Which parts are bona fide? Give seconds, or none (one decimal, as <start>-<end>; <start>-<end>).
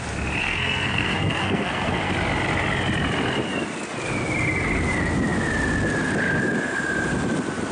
0.0-0.4; 2.1-7.7